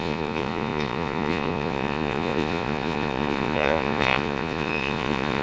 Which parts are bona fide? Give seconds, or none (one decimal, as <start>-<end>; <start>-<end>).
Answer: none